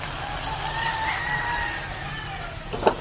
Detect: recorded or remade recorded